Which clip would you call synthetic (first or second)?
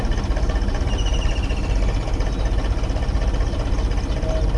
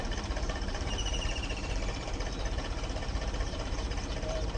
second